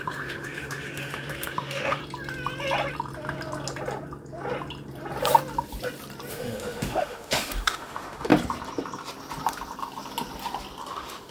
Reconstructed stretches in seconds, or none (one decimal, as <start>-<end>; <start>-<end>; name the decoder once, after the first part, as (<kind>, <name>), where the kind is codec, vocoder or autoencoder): 0.0-2.0 (autoencoder, DAC-VAE); 6.3-8.3; 10.9-11.3